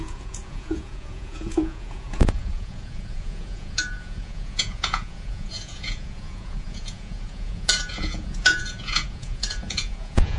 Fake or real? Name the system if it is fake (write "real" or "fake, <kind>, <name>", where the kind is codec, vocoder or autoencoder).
fake, vocoder, Vocos